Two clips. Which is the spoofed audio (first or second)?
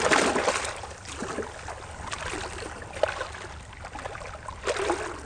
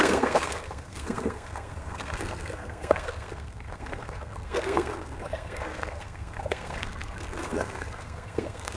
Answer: second